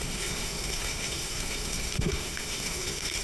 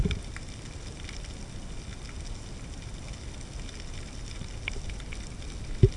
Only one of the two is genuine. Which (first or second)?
second